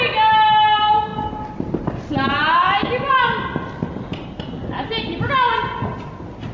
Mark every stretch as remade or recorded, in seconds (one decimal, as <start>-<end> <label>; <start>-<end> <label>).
0.0-6.5 recorded

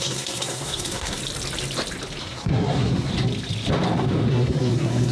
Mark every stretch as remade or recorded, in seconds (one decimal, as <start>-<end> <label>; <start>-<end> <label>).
0.0-1.2 remade; 1.2-2.2 recorded; 2.2-3.1 remade; 3.1-4.3 recorded; 4.3-5.1 remade